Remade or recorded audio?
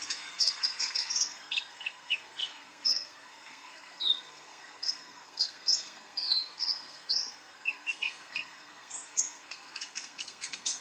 remade